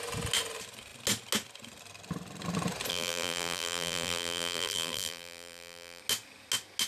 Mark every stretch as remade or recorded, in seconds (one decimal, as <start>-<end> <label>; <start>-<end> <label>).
0.0-2.9 recorded; 2.9-6.0 remade; 6.0-6.9 recorded